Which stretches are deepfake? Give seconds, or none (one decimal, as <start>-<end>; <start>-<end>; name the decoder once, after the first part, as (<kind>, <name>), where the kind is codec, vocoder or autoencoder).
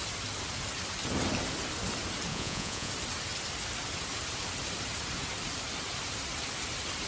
2.3-2.9 (vocoder, Vocos)